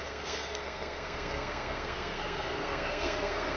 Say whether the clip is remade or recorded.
remade